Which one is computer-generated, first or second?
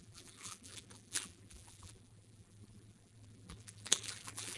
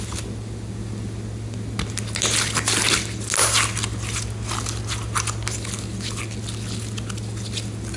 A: first